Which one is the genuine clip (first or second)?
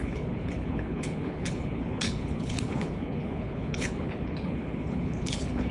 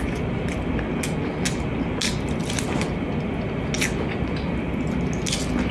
second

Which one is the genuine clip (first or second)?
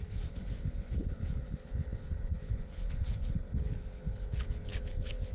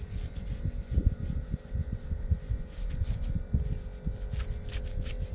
second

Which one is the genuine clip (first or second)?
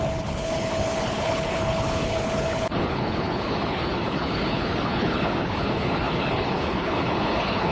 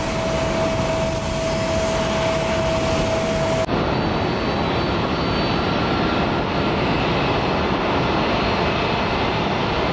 second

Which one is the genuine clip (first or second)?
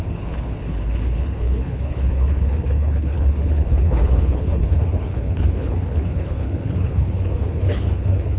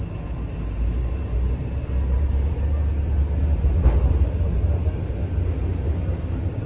second